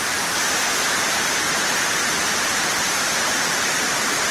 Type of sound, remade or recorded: remade